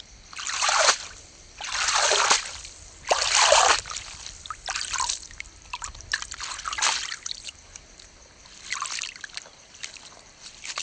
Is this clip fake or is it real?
fake